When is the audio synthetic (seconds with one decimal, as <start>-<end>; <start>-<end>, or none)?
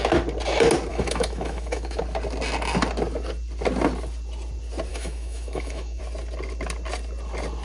0.9-2.0; 4.9-6.0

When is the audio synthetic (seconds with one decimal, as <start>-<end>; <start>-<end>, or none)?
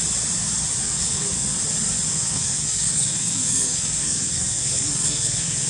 0.8-1.6; 2.1-5.7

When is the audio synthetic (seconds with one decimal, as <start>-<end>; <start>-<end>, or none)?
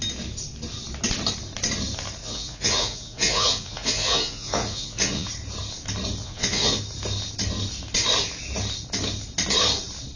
2.2-5.3; 6.2-6.8